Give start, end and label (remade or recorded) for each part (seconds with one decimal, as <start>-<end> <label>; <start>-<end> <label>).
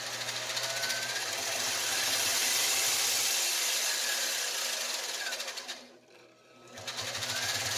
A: 0.0-7.8 recorded